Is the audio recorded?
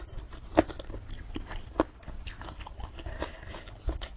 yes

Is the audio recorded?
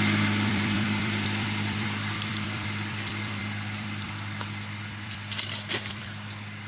no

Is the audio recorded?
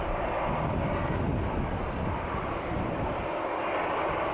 no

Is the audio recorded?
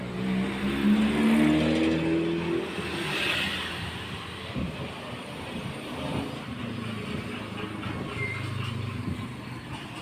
yes